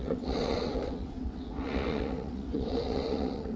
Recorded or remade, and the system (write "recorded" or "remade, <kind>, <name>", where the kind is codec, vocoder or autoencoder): remade, vocoder, WaveNeXt